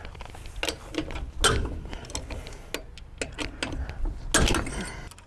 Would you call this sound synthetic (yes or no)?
no